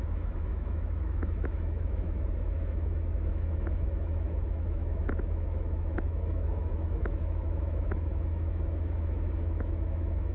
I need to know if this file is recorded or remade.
remade